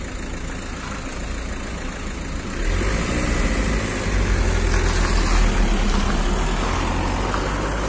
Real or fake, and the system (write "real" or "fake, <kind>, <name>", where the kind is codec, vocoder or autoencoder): real